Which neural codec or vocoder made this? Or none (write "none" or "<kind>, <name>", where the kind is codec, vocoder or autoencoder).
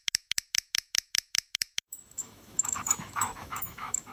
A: autoencoder, DAC-VAE